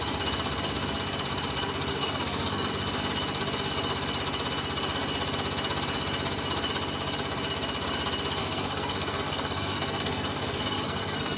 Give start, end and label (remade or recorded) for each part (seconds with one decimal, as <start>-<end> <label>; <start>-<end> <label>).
0.0-1.9 recorded; 1.9-2.7 remade; 2.7-8.4 recorded; 8.4-11.4 remade